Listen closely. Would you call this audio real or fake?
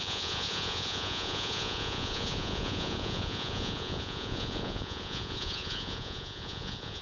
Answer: fake